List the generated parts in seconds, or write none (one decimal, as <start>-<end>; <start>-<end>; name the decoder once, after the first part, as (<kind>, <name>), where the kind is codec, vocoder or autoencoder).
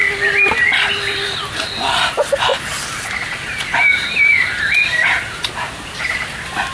none